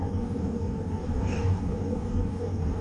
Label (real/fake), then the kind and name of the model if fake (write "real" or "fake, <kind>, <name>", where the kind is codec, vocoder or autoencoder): fake, codec, DAC